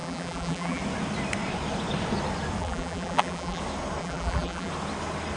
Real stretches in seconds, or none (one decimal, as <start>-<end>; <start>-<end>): 0.8-2.6; 3.6-4.0; 4.7-5.4